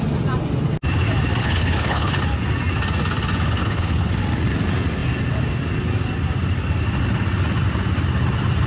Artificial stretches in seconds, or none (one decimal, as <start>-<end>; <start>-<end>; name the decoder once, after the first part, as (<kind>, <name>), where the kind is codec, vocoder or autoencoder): 1.4-2.2 (codec, HILCodec); 3.6-4.1